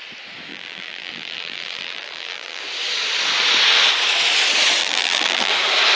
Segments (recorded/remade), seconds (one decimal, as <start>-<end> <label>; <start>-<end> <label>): 0.0-0.5 recorded; 0.5-2.6 remade; 2.6-4.8 recorded; 4.8-5.5 remade; 5.5-6.0 recorded